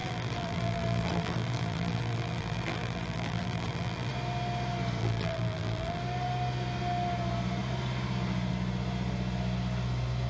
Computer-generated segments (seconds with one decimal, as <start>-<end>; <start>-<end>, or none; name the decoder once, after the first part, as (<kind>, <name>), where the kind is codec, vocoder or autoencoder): 0.0-4.1 (vocoder, BigVGAN v2); 5.0-6.0